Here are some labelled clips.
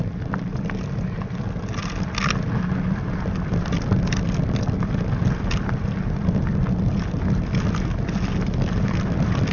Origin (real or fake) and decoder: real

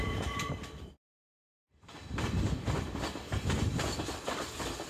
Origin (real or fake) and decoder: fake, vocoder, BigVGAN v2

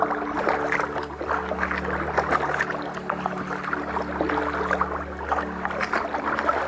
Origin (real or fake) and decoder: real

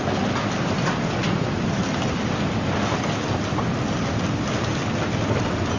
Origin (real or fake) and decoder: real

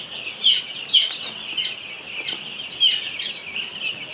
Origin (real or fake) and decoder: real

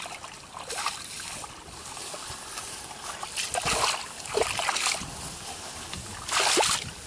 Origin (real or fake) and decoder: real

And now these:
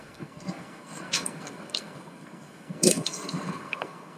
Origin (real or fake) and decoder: fake, codec, SNAC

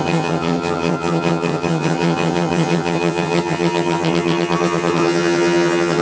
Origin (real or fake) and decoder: fake, vocoder, HiFi-GAN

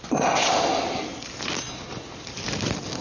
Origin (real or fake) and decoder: real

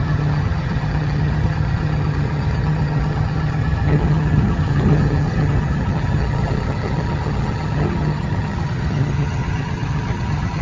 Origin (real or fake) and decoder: fake, vocoder, HiFi-GAN